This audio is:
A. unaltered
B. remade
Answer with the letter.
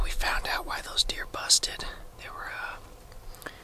A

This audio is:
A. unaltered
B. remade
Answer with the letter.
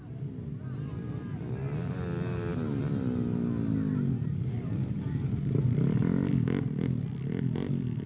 A